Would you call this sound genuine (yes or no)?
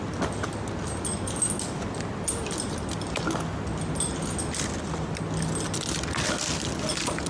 yes